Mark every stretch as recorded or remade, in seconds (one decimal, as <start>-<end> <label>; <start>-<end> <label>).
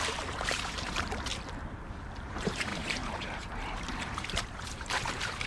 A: 0.0-1.3 remade; 1.3-2.2 recorded; 2.2-5.5 remade